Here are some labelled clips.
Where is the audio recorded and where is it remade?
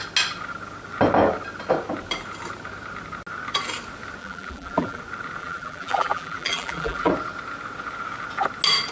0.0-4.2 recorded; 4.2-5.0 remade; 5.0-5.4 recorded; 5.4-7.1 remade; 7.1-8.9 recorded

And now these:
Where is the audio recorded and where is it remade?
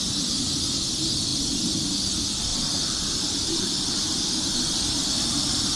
0.0-2.5 recorded; 2.5-5.8 remade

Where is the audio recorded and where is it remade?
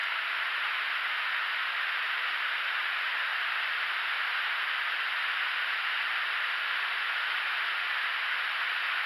0.0-3.3 remade; 3.3-4.1 recorded; 4.1-6.1 remade; 6.1-6.9 recorded; 6.9-9.1 remade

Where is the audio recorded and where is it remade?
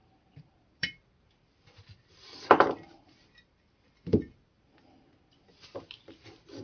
0.0-3.9 remade; 3.9-6.6 recorded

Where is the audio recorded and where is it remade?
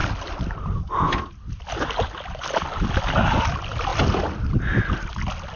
0.0-5.6 recorded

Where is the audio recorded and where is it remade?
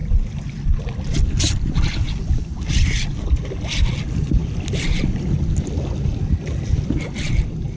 0.0-7.8 recorded